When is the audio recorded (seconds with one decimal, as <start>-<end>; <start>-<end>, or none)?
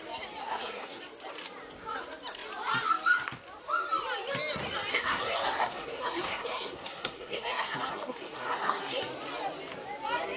0.0-0.4; 1.0-4.9; 9.0-10.4